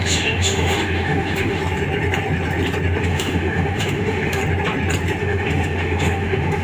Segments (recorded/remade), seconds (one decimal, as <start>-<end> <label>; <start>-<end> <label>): 0.0-1.6 remade; 1.6-3.0 recorded; 3.0-4.4 remade; 4.4-5.2 recorded; 5.2-6.6 remade